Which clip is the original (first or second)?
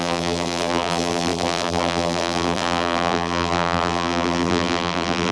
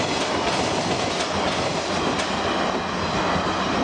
second